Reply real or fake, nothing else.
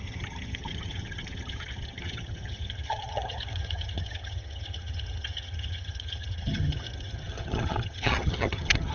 fake